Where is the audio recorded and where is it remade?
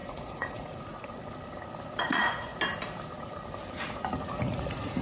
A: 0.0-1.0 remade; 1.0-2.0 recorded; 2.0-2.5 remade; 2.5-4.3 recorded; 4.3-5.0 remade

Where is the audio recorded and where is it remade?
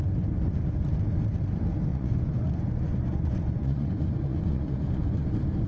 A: 0.0-1.9 recorded; 1.9-5.3 remade; 5.3-5.7 recorded